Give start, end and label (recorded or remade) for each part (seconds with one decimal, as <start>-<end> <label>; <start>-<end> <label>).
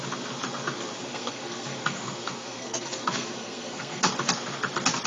0.0-1.0 recorded; 1.0-4.1 remade; 4.1-5.1 recorded